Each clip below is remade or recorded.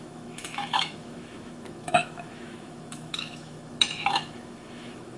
remade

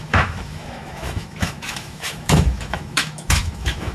remade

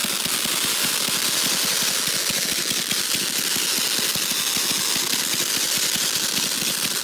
recorded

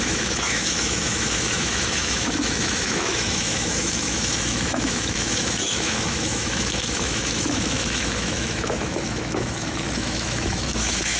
remade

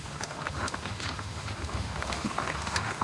remade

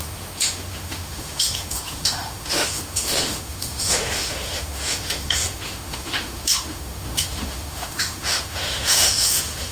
remade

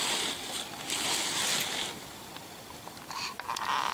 recorded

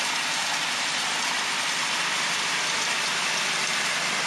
recorded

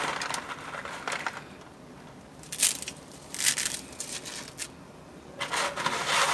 recorded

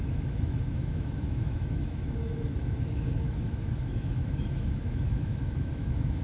remade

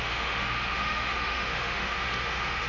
remade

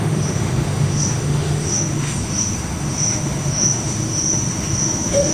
remade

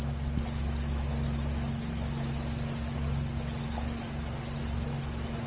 recorded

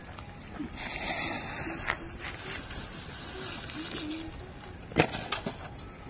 recorded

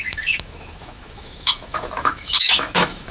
remade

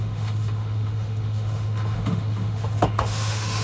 remade